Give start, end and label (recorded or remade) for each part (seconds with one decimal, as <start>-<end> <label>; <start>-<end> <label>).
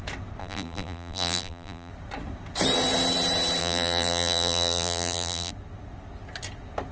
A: 0.0-0.4 recorded; 0.4-1.9 remade; 1.9-3.6 recorded; 3.6-5.5 remade; 5.5-6.9 recorded